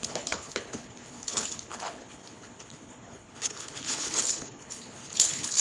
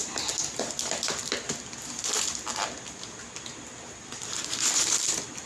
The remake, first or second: first